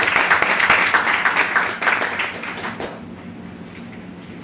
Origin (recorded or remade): recorded